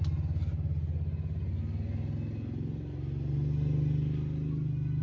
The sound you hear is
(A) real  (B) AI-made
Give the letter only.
A